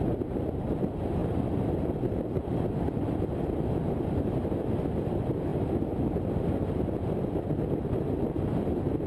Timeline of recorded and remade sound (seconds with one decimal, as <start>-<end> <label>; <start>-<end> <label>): 0.0-1.2 recorded; 1.2-4.2 remade; 4.2-5.5 recorded; 5.5-6.3 remade; 6.3-9.1 recorded